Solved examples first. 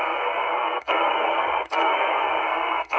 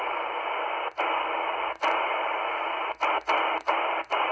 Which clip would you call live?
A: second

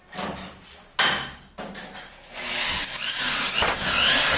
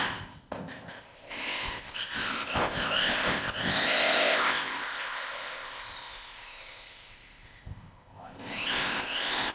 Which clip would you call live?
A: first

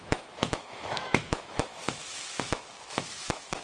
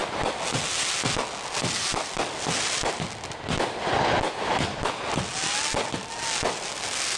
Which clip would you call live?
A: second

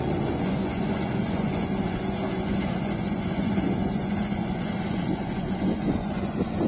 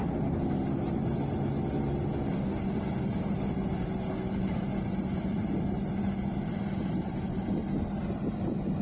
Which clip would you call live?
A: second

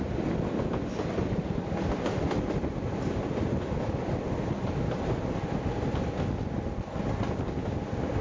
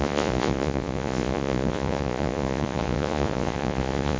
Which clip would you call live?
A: first